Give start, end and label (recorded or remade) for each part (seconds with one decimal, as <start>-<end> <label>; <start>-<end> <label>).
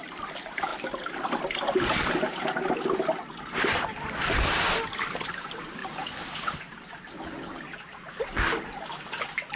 0.0-0.7 recorded; 0.7-1.5 remade; 1.5-9.6 recorded